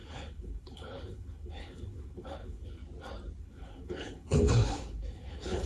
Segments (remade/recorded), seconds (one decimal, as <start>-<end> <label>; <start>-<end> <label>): 0.0-2.8 remade; 2.8-3.4 recorded; 3.4-5.7 remade